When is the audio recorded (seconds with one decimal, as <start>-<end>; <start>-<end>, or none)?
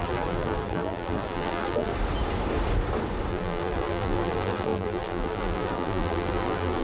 1.9-3.3